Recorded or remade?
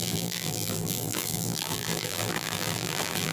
remade